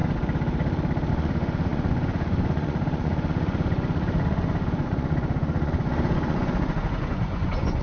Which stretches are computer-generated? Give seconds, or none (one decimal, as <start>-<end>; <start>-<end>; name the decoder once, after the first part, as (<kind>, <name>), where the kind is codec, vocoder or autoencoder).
1.1-7.8 (vocoder, Vocos)